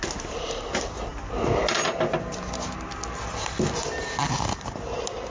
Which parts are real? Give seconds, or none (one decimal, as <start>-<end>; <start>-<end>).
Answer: 0.0-5.3